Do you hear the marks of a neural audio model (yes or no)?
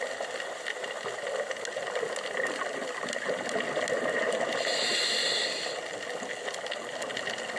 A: no